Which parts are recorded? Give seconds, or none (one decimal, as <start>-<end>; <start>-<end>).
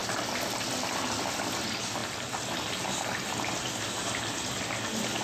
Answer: 0.0-5.2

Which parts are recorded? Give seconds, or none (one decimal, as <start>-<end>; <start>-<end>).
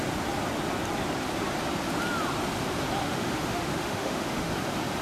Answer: 0.0-3.0; 4.5-5.0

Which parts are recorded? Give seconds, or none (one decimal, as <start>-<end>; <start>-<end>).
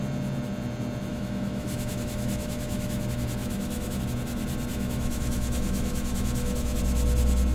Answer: 0.0-1.1; 3.0-3.4; 4.0-4.7; 6.8-7.5